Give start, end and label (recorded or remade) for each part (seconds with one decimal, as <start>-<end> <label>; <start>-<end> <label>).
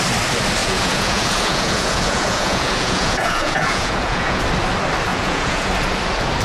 0.0-0.6 recorded; 0.6-4.4 remade; 4.4-5.1 recorded; 5.1-5.7 remade; 5.7-6.4 recorded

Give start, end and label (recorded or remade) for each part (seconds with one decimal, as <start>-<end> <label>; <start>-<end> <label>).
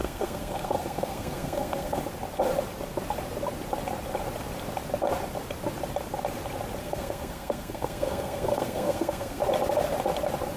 0.0-2.0 remade; 2.0-6.8 recorded; 6.8-9.4 remade; 9.4-10.6 recorded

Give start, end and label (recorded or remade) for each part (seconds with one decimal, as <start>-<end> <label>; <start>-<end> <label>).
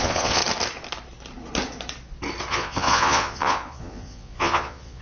0.0-0.4 remade; 0.4-2.5 recorded; 2.5-5.0 remade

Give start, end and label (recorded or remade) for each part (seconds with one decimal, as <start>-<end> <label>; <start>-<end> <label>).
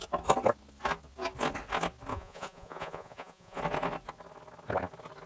0.0-2.1 recorded; 2.1-3.6 remade; 3.6-5.3 recorded